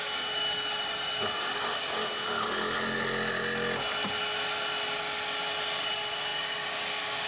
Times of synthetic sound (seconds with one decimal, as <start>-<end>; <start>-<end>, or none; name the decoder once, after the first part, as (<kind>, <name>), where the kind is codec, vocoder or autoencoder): 0.0-2.0 (codec, DAC); 5.6-7.3